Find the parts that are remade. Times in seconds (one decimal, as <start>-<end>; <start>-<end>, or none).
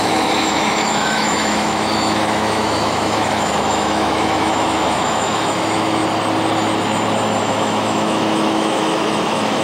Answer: 0.0-6.0; 7.4-9.6